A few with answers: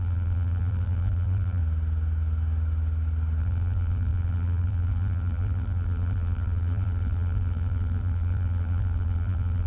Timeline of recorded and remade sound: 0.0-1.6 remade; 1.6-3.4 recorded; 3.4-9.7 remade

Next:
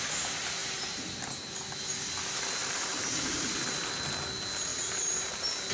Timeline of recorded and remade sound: 0.0-0.6 recorded; 0.6-1.2 remade; 1.2-2.6 recorded; 2.6-3.4 remade; 3.4-4.7 recorded; 4.7-5.3 remade; 5.3-5.7 recorded

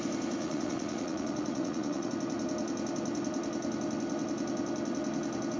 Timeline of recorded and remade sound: 0.0-0.4 recorded; 0.4-2.1 remade; 2.1-5.6 recorded

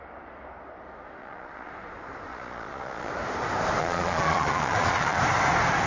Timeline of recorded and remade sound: 0.0-1.2 recorded; 1.2-1.7 remade; 1.7-2.3 recorded; 2.3-3.1 remade; 3.1-3.8 recorded; 3.8-5.2 remade; 5.2-5.9 recorded

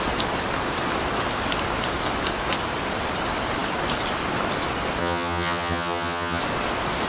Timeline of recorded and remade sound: 0.0-5.0 recorded; 5.0-6.4 remade; 6.4-7.1 recorded

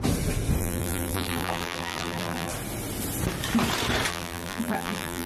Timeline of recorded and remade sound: 0.0-0.6 recorded; 0.6-2.5 remade; 2.5-4.1 recorded; 4.1-5.3 remade

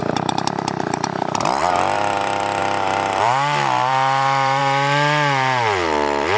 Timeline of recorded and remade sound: 0.0-2.6 remade; 2.6-3.1 recorded; 3.1-4.6 remade; 4.6-6.4 recorded

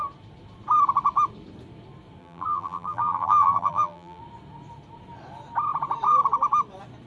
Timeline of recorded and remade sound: 0.0-2.2 recorded; 2.2-4.2 remade; 4.2-7.1 recorded